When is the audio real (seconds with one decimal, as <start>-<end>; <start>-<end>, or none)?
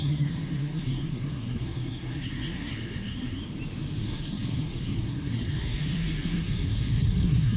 3.4-4.0